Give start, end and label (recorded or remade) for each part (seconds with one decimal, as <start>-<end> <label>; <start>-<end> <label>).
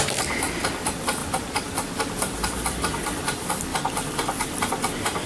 0.0-5.3 recorded